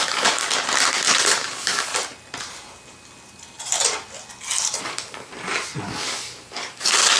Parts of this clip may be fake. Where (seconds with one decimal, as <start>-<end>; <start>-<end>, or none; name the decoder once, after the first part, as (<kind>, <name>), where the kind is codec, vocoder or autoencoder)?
0.0-0.4 (codec, DAC); 0.9-1.9; 4.8-5.3; 5.8-7.2